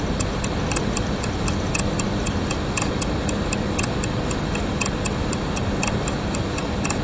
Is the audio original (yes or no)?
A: yes